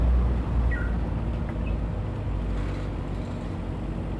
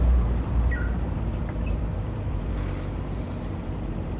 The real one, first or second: first